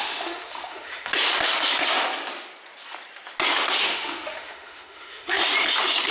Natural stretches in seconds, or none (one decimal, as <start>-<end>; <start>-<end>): 1.1-3.8; 5.4-6.1